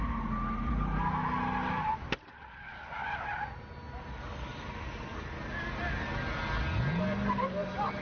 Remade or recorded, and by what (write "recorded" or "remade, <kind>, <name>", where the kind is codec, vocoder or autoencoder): recorded